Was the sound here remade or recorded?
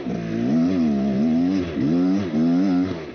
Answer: recorded